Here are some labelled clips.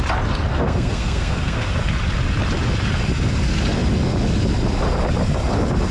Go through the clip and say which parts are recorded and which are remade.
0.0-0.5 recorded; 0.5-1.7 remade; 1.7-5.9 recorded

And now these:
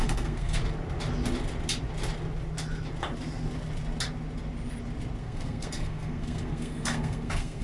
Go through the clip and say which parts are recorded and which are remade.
0.0-0.6 remade; 0.6-5.2 recorded; 5.2-7.6 remade

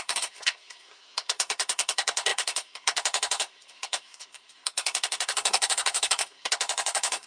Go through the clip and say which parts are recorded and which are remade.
0.0-7.3 remade

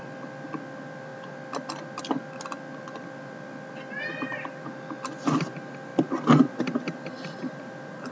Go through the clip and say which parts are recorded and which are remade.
0.0-8.1 recorded

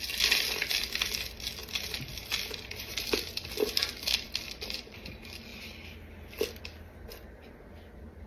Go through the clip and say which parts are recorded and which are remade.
0.0-8.3 recorded

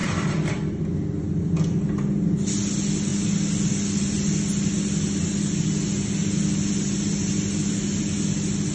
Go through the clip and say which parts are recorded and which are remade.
0.0-8.7 recorded

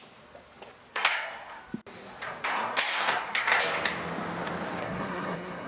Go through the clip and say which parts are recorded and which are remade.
0.0-0.9 recorded; 0.9-1.6 remade; 1.6-2.5 recorded; 2.5-3.6 remade; 3.6-4.8 recorded; 4.8-5.7 remade